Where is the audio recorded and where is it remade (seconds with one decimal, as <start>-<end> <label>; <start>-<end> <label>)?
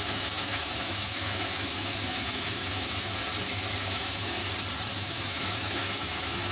0.0-3.2 remade; 3.2-3.9 recorded; 3.9-4.4 remade; 4.4-4.9 recorded; 4.9-6.5 remade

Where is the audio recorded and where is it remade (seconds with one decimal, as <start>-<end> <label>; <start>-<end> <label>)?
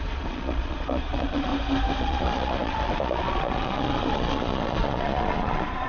0.0-1.5 remade; 1.5-2.0 recorded; 2.0-5.9 remade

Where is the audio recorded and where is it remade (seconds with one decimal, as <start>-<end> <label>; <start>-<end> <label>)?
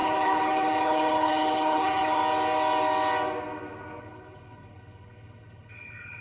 0.0-2.2 remade; 2.2-4.0 recorded; 4.0-6.2 remade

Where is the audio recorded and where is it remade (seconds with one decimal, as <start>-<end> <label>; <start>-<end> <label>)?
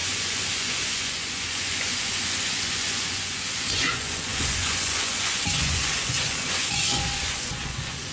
0.0-8.1 remade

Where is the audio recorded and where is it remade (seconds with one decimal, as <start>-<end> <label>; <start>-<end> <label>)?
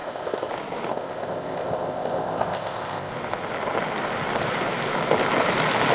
0.0-0.5 remade; 0.5-0.9 recorded; 0.9-3.1 remade; 3.1-5.9 recorded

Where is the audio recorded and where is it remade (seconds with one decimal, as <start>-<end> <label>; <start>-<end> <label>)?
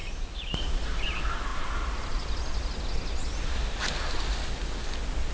0.0-0.8 remade; 0.8-5.3 recorded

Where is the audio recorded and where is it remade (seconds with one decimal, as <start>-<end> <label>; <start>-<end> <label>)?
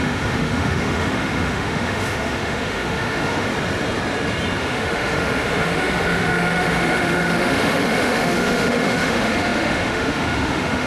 0.0-3.5 remade; 3.5-4.6 recorded; 4.6-10.9 remade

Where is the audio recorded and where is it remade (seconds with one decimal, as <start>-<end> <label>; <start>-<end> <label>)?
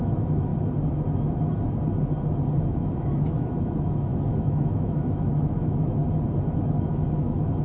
0.0-0.5 remade; 0.5-2.7 recorded; 2.7-6.0 remade; 6.0-6.7 recorded; 6.7-7.6 remade